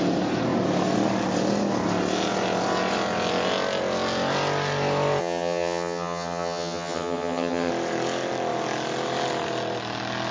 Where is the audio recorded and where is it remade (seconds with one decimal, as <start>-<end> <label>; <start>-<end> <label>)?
0.0-5.2 recorded; 5.2-7.7 remade; 7.7-10.3 recorded